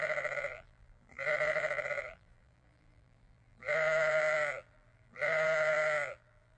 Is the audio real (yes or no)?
no